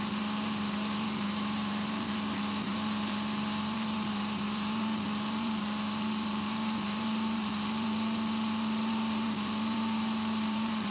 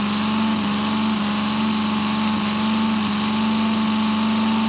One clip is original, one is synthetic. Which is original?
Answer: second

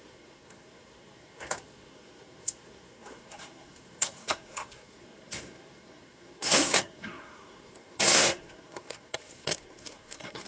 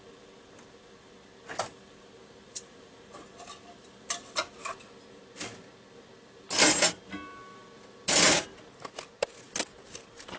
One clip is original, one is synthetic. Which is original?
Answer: second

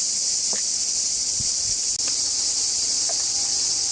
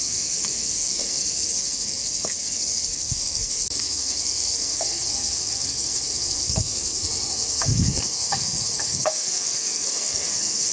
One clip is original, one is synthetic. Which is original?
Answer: first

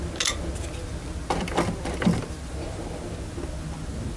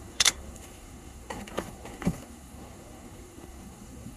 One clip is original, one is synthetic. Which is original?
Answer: first